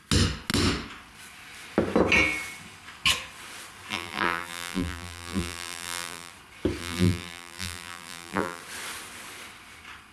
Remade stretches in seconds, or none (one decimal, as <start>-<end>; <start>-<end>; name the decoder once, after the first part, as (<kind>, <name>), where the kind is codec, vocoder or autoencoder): 3.9-6.3 (vocoder, BigVGAN v2); 6.8-8.6